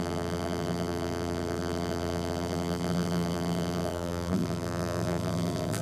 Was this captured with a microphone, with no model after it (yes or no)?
no